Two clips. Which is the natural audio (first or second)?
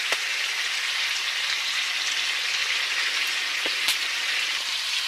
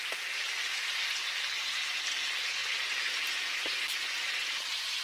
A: second